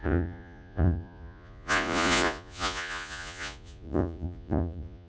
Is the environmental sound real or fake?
fake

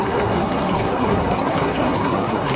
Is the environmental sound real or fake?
fake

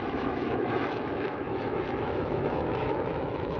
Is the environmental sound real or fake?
fake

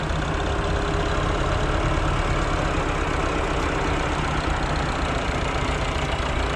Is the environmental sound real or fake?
real